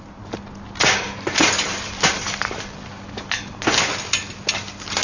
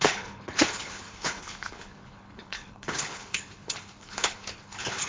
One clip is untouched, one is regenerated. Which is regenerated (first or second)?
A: second